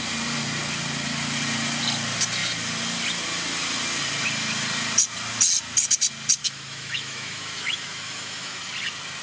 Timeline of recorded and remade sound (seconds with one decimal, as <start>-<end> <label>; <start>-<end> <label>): 0.0-6.4 recorded; 6.4-8.6 remade; 8.6-9.2 recorded